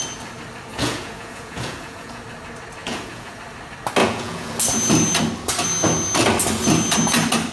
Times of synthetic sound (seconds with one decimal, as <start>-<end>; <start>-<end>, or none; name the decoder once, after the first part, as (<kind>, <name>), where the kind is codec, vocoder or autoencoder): 0.7-2.2 (vocoder, Vocos); 2.8-3.4; 4.0-4.5